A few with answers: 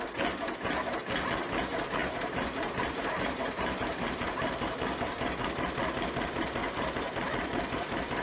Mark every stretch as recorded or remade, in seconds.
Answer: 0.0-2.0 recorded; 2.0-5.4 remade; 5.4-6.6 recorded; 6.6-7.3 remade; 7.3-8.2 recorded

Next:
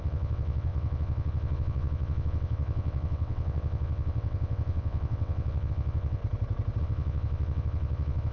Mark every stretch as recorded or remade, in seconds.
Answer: 0.0-6.2 remade; 6.2-6.8 recorded; 6.8-8.3 remade